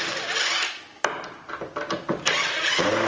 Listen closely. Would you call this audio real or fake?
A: real